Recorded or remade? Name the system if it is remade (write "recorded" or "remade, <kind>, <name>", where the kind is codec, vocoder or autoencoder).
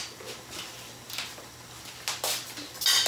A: recorded